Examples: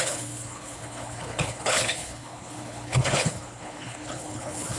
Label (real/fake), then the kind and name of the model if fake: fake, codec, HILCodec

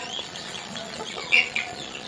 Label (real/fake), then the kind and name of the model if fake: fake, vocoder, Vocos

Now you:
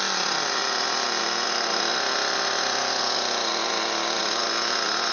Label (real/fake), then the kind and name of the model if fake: real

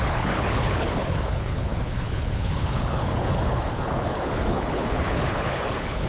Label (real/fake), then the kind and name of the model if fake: fake, codec, HILCodec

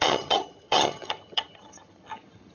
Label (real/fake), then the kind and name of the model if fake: fake, vocoder, HiFi-GAN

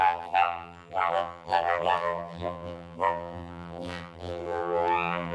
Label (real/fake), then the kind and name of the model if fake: fake, vocoder, BigVGAN v2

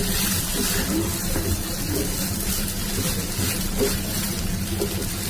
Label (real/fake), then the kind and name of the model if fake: real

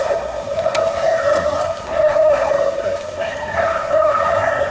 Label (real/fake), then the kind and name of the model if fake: fake, codec, SNAC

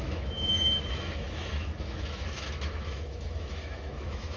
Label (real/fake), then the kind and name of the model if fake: fake, autoencoder, DAC-VAE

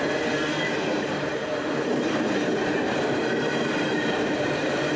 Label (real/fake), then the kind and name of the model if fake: fake, vocoder, BigVGAN v2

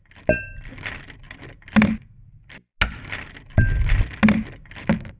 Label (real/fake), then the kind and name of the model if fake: real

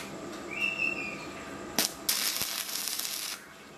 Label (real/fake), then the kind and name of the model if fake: real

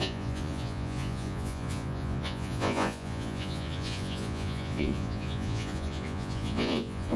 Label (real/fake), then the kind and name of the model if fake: fake, vocoder, Vocos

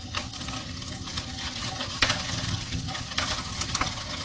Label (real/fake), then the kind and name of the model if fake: fake, vocoder, HiFi-GAN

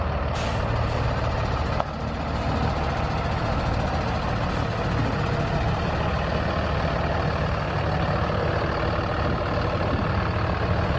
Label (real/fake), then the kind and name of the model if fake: real